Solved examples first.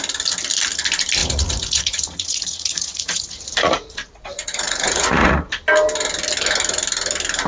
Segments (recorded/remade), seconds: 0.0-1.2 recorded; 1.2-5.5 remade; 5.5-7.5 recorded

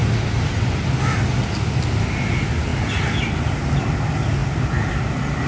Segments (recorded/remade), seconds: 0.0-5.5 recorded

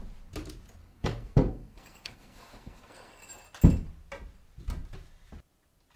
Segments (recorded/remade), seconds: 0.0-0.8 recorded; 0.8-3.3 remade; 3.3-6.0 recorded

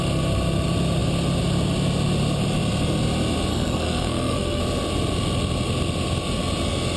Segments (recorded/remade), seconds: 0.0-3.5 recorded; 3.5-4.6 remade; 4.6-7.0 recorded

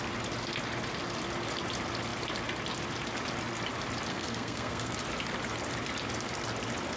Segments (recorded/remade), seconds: 0.0-4.1 recorded; 4.1-4.9 remade; 4.9-7.0 recorded

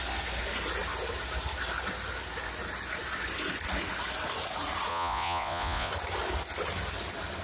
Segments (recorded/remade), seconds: 0.0-4.9 recorded; 4.9-5.9 remade; 5.9-7.4 recorded

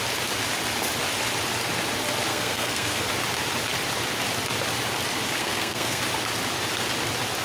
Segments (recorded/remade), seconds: 0.0-2.3 recorded; 2.3-3.0 remade; 3.0-5.4 recorded; 5.4-6.0 remade; 6.0-7.4 recorded